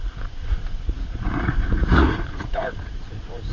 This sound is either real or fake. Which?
fake